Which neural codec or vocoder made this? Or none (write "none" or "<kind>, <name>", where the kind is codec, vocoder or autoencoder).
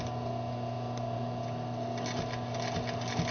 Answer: none